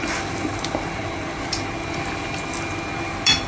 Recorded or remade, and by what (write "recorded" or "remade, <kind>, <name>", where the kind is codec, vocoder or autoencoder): recorded